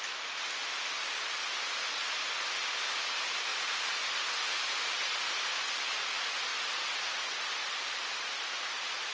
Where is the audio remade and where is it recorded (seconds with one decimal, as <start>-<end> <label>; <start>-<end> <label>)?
0.0-9.1 recorded